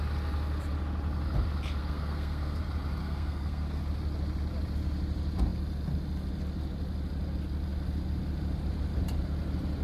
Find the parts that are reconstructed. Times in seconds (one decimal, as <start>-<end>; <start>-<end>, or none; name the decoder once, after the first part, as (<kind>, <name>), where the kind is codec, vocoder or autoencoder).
1.8-2.6 (codec, SNAC); 3.0-3.8